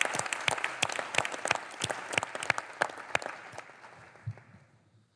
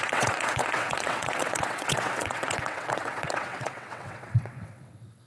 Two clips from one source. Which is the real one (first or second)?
first